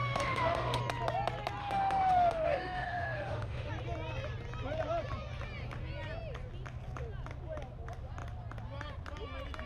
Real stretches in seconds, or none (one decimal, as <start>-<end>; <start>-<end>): 0.8-1.6; 3.7-9.7